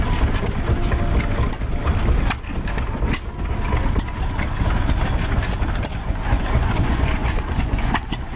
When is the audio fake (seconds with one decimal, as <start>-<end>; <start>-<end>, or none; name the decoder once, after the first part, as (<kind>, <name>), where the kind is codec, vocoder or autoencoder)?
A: 5.9-8.4 (vocoder, Vocos)